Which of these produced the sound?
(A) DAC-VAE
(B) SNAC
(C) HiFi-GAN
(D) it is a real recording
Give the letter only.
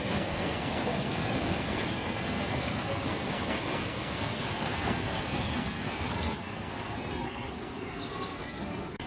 B